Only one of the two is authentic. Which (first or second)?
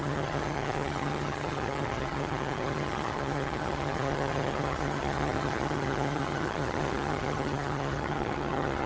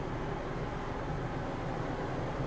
second